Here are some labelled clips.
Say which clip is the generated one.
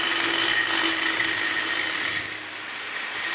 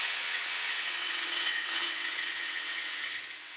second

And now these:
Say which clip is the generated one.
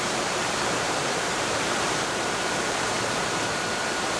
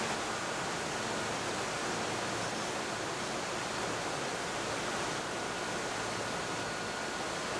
first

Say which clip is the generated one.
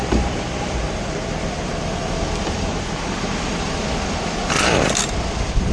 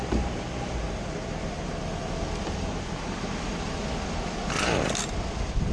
first